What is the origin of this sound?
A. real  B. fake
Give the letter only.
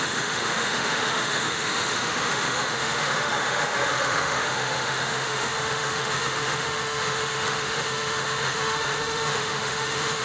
B